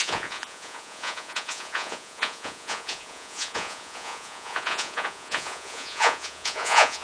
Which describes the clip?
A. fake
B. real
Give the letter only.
A